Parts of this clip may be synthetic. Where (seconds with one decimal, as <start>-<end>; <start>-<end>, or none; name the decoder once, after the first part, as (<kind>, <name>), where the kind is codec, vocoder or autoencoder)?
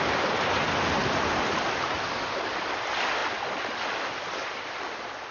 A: none